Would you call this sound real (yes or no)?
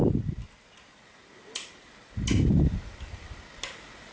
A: yes